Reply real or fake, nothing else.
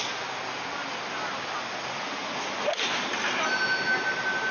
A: real